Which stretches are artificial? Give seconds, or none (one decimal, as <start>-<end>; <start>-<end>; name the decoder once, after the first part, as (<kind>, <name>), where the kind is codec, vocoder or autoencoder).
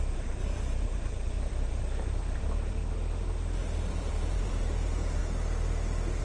0.0-2.8 (vocoder, BigVGAN v2); 3.9-5.2